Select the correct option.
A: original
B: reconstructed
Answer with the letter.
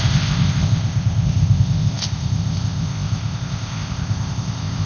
B